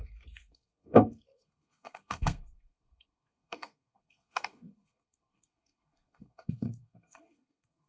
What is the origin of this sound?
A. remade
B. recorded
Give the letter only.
A